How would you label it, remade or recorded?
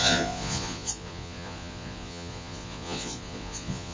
remade